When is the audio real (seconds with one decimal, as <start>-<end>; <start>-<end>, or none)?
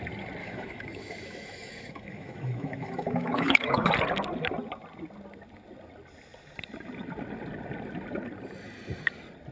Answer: 0.0-0.4; 3.9-9.5